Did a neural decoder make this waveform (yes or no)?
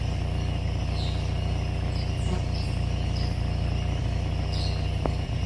no